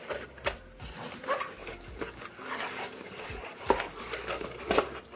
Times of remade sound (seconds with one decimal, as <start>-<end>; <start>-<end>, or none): 1.6-4.7